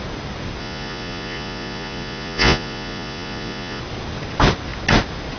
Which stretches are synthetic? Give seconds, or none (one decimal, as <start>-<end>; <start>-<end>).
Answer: 0.6-3.8